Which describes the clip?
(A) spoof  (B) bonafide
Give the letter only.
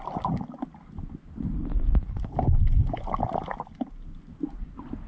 B